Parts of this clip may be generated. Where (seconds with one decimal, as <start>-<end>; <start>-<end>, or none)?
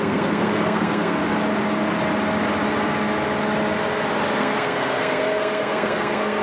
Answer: 0.0-1.2; 4.4-6.4